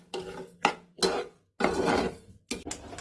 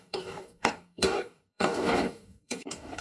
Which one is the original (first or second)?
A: first